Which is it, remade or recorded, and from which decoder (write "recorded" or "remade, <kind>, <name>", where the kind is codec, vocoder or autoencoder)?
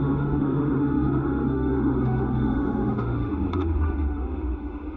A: remade, autoencoder, DAC-VAE